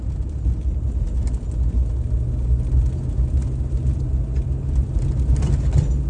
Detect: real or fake real